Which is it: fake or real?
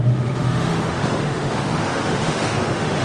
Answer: fake